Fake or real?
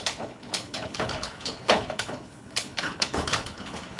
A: fake